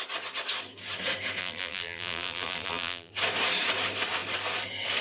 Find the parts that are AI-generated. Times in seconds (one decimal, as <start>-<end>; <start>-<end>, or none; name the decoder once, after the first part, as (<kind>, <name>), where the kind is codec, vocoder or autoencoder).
1.4-3.1 (vocoder, BigVGAN v2)